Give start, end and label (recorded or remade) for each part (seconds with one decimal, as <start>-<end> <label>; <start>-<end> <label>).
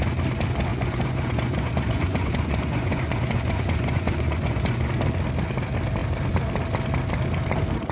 0.0-0.7 recorded; 0.7-4.9 remade; 4.9-7.9 recorded